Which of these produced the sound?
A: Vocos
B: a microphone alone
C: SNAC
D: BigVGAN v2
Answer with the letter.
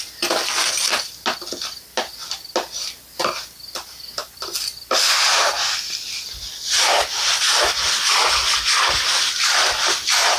B